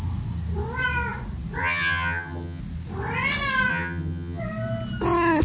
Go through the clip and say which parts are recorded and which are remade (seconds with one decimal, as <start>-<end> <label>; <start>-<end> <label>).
0.0-1.6 recorded; 1.6-2.6 remade; 2.6-3.7 recorded; 3.7-4.4 remade; 4.4-5.4 recorded